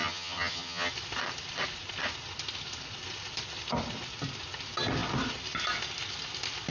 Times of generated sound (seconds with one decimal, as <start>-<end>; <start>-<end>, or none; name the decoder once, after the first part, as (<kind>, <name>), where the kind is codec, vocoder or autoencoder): 0.0-0.9 (vocoder, HiFi-GAN)